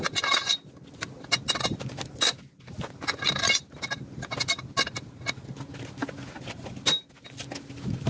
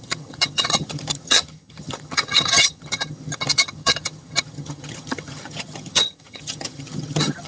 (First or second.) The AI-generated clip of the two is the second